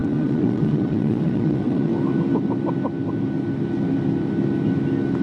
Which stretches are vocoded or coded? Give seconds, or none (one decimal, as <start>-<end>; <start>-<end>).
0.0-1.9